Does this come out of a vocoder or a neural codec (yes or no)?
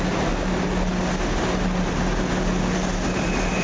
no